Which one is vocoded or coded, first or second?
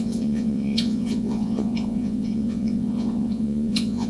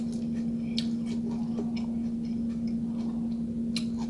first